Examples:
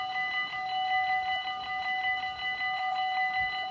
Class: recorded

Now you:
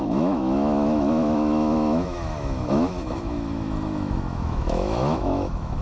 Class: remade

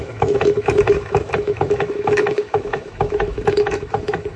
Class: remade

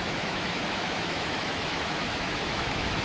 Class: remade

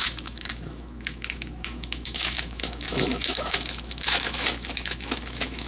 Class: remade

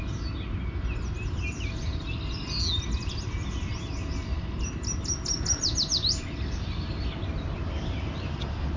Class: recorded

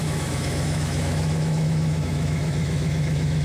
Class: remade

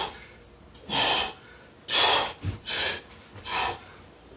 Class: recorded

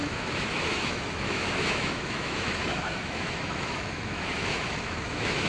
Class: remade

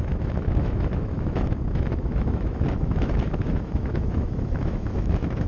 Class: remade